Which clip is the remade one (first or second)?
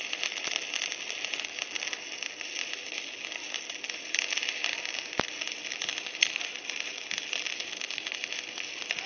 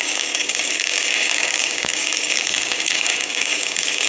second